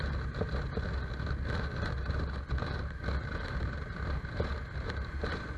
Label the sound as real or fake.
real